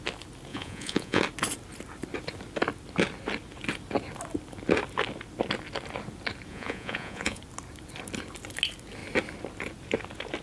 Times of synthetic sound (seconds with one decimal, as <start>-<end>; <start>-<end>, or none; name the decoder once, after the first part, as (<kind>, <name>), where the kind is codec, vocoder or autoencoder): 0.5-1.2 (vocoder, Vocos); 6.5-7.4